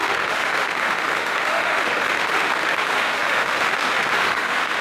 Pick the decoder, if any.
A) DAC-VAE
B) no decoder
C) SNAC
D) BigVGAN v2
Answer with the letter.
A